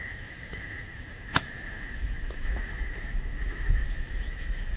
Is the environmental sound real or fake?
fake